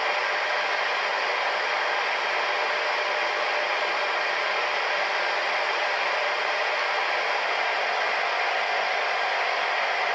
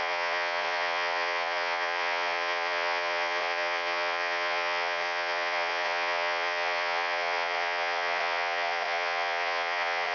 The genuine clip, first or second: first